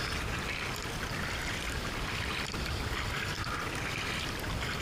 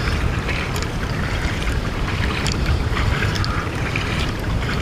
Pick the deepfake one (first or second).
second